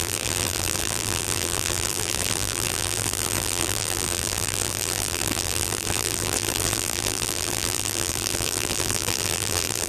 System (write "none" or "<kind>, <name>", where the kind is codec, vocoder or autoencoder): vocoder, BigVGAN v2